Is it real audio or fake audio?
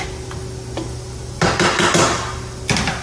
real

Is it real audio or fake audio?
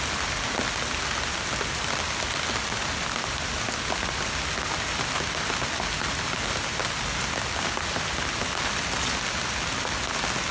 real